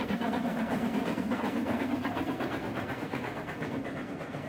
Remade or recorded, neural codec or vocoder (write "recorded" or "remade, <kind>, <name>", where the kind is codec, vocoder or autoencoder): remade, codec, SNAC